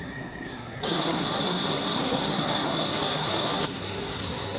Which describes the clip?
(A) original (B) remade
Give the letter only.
B